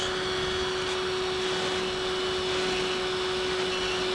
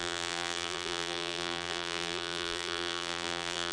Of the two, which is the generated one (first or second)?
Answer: second